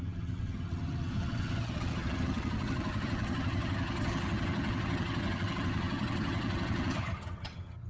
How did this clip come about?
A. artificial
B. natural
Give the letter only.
A